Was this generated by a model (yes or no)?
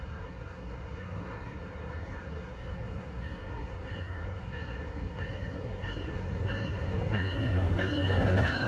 yes